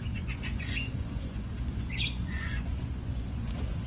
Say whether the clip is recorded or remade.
remade